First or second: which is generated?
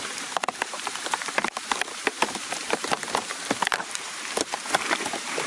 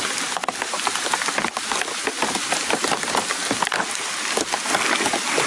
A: first